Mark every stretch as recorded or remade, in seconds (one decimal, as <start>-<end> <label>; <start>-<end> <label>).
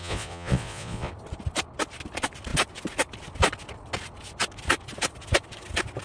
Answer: 0.0-1.1 remade; 1.1-6.0 recorded